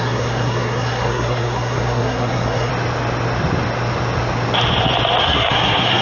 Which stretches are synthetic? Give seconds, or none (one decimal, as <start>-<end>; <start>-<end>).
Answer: 0.0-2.7; 5.2-6.0